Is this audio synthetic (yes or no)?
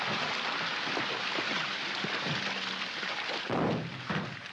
no